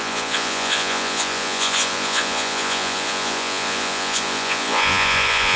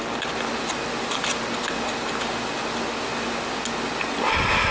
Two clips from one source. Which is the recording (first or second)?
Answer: second